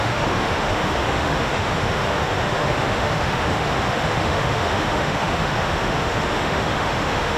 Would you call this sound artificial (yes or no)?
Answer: yes